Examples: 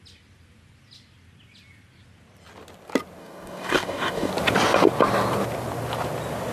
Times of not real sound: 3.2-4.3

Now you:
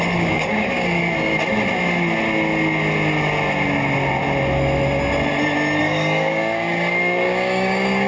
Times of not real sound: 0.0-1.0; 5.8-8.1